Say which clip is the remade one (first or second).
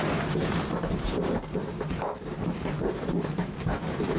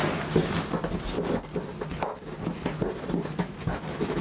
first